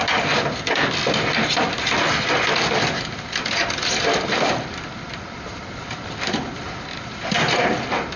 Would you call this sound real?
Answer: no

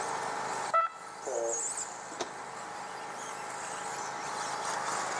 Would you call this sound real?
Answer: yes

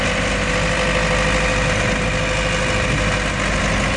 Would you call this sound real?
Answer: yes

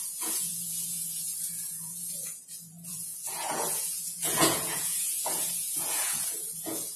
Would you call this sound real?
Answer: no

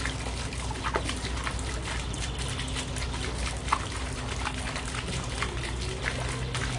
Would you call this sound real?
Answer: yes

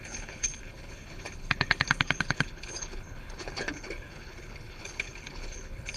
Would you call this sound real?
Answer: no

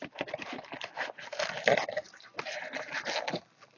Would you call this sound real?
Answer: yes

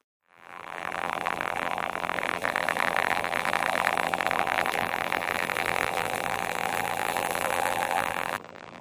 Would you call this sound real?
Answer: no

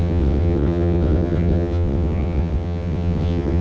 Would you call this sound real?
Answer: no